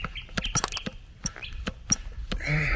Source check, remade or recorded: recorded